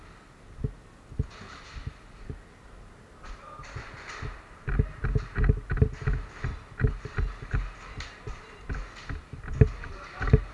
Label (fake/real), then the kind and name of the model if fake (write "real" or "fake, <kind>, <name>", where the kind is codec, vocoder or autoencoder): real